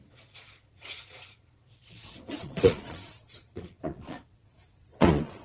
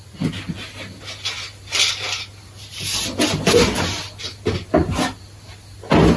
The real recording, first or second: second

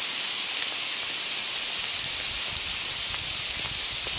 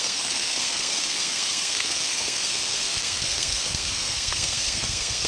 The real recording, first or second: first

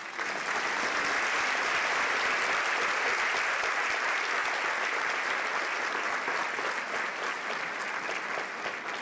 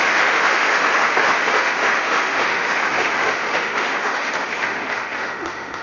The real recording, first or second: first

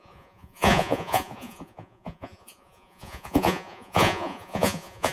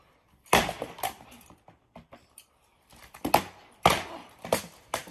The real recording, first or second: second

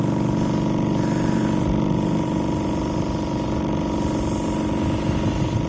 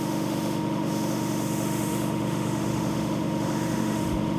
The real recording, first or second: first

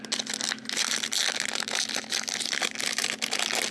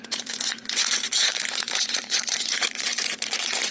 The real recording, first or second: first